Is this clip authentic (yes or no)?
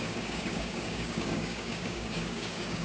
no